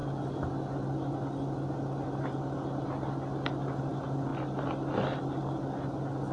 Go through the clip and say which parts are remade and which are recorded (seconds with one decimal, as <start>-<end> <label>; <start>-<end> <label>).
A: 0.0-6.3 recorded